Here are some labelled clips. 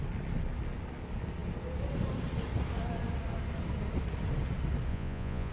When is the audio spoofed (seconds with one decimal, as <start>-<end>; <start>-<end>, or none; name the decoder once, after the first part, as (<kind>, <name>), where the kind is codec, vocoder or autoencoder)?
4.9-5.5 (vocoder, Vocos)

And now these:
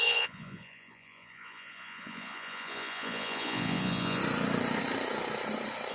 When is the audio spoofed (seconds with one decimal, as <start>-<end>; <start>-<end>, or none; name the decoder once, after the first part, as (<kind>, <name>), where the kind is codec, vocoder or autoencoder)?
0.0-4.2 (vocoder, Vocos)

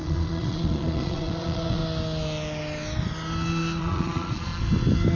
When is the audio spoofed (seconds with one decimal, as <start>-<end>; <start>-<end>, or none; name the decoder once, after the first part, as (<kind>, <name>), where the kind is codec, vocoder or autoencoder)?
0.0-1.8 (vocoder, Vocos); 3.8-4.5

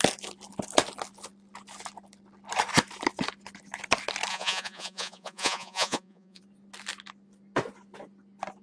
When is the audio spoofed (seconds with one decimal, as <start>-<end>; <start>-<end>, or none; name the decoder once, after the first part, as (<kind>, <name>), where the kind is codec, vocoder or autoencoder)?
4.3-6.4 (vocoder, Vocos)